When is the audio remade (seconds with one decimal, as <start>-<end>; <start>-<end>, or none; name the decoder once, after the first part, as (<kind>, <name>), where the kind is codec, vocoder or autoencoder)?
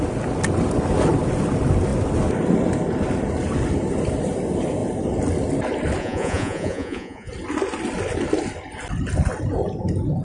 6.0-7.3 (vocoder, Vocos)